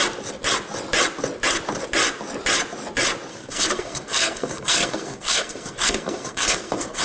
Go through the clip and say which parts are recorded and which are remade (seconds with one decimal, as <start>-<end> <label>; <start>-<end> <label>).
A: 0.0-3.3 recorded; 3.3-7.0 remade